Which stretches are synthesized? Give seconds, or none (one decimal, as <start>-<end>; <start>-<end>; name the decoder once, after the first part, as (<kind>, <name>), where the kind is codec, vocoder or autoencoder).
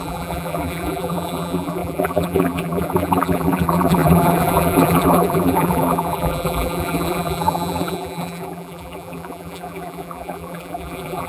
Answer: 0.0-11.3 (vocoder, BigVGAN v2)